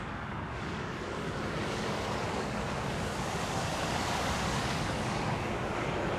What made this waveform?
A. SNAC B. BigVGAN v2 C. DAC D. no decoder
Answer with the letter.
C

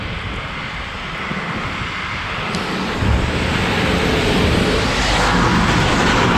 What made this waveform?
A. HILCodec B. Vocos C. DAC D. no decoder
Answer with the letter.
D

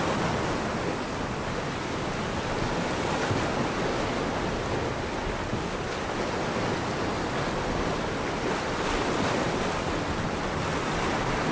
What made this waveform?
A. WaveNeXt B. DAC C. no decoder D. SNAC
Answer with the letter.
C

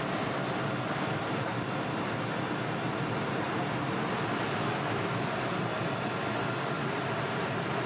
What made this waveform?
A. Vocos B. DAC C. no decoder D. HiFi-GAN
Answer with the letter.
C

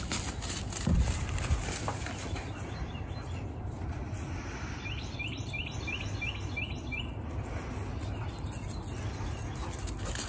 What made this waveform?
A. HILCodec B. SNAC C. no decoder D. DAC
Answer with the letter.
C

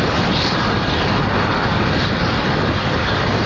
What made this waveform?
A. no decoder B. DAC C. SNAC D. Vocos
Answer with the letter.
A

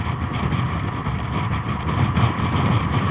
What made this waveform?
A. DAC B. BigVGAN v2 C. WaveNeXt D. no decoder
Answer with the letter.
D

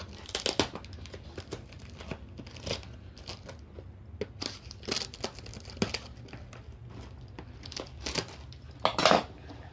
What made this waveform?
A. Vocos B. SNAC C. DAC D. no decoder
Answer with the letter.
D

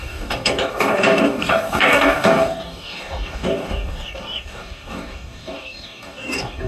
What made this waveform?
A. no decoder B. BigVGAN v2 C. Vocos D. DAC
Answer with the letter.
D